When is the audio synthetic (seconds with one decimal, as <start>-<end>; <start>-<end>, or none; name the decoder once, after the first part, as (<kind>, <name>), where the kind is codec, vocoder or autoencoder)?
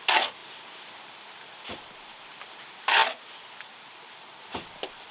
0.0-5.1 (vocoder, BigVGAN v2)